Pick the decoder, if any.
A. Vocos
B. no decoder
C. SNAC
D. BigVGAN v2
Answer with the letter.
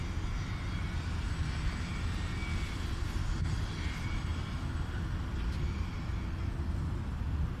B